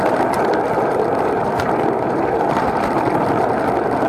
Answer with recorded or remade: recorded